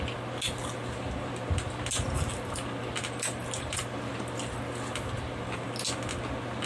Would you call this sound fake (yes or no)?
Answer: no